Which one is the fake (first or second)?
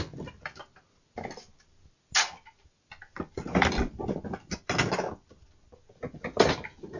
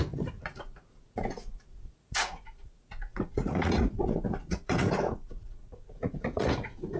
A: second